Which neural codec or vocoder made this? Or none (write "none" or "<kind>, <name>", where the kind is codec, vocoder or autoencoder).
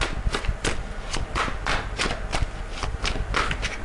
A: none